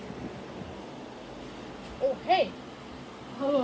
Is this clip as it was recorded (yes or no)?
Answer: yes